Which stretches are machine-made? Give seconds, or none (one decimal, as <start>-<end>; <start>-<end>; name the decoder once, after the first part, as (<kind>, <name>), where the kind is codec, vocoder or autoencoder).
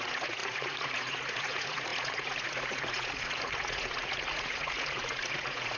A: 0.0-5.8 (vocoder, Vocos)